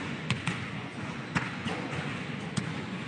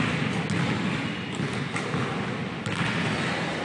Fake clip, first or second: first